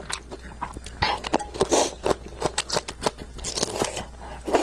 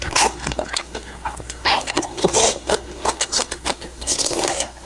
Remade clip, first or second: second